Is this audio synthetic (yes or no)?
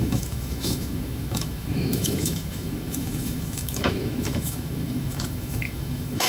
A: yes